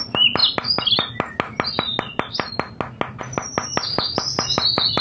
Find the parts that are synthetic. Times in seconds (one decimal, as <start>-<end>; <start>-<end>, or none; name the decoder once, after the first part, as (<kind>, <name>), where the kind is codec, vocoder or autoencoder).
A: none